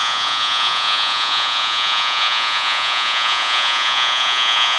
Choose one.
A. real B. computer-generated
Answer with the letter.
B